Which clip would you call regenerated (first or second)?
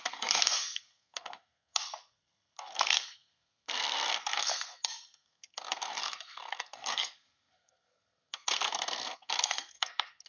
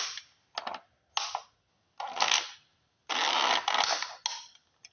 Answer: first